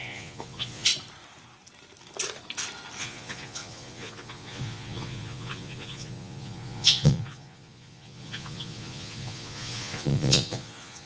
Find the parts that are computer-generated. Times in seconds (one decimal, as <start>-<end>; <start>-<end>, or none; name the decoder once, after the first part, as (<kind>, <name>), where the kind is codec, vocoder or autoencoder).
0.0-0.9 (vocoder, Vocos); 3.0-11.1